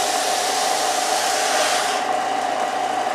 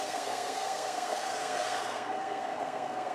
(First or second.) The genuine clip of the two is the first